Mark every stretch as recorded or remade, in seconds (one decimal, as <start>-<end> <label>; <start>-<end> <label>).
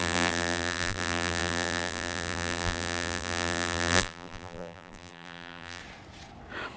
0.0-5.8 remade; 5.8-6.8 recorded